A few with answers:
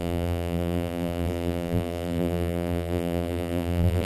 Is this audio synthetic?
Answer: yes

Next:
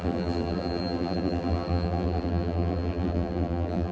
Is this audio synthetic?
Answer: yes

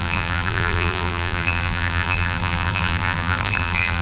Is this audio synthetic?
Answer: yes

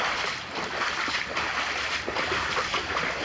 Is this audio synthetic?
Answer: no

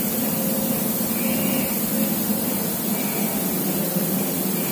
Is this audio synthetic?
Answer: no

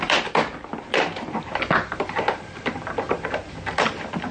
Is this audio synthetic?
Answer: yes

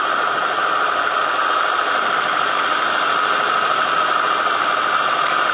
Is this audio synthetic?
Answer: yes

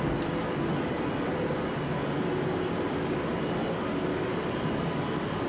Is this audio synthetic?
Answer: no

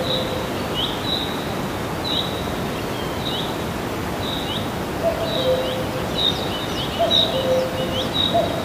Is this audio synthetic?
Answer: no